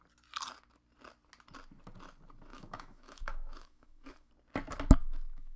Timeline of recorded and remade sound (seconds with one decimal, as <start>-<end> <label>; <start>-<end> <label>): 0.0-2.5 recorded; 2.5-4.3 remade; 4.3-5.0 recorded; 5.0-5.6 remade

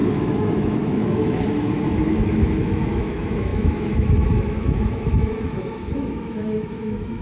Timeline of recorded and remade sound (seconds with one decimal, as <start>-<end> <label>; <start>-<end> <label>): 0.0-7.2 remade

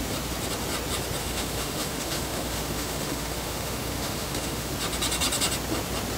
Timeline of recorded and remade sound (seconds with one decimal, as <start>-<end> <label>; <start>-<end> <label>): 0.0-1.2 recorded; 1.2-4.7 remade; 4.7-6.2 recorded